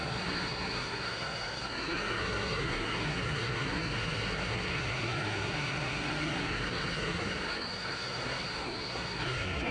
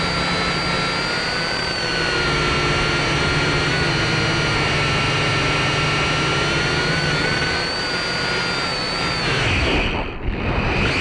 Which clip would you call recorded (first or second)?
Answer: second